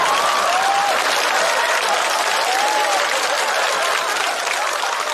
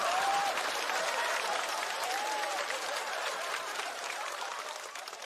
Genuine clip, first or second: first